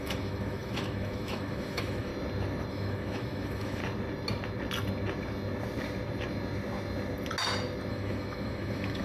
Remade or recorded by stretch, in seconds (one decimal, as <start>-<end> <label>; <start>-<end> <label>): 0.0-2.1 remade; 2.1-2.7 recorded; 2.7-3.8 remade; 3.8-7.9 recorded; 7.9-9.0 remade